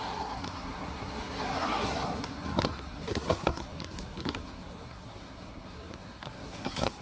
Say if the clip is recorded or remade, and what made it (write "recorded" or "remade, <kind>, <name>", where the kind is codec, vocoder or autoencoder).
remade, codec, SNAC